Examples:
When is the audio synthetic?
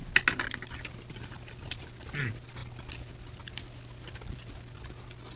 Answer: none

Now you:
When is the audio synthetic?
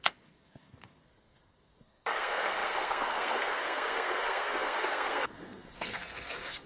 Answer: 0.0-6.7 (codec, SNAC)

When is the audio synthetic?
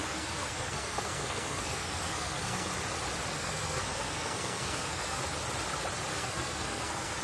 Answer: 0.0-2.7 (codec, SNAC); 3.3-5.2; 6.1-7.2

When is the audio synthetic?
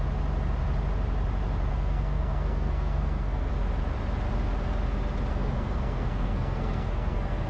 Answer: 1.7-3.5 (codec, SNAC); 5.3-7.5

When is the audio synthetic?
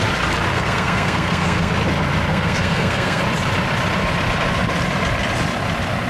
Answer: 0.5-1.7 (codec, SNAC); 2.3-3.2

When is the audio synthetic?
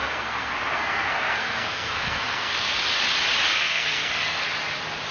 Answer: 0.0-2.8 (codec, SNAC); 3.5-4.4